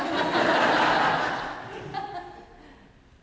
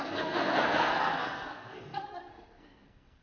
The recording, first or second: first